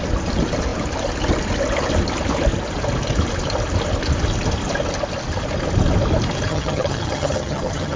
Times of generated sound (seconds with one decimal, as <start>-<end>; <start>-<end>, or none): 6.5-8.0